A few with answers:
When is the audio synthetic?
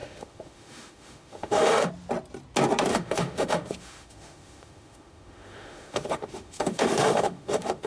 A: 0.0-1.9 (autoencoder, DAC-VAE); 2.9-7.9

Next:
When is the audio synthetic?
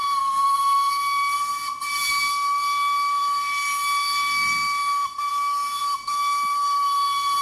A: 5.3-5.8 (autoencoder, DAC-VAE)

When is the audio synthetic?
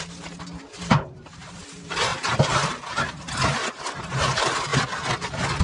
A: 0.0-4.7 (vocoder, BigVGAN v2)